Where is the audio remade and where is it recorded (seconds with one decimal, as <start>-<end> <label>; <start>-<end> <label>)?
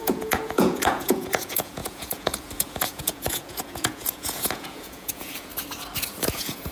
0.0-5.5 remade; 5.5-6.2 recorded; 6.2-6.7 remade